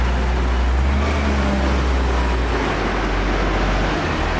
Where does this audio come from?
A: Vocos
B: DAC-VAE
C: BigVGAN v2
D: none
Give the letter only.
D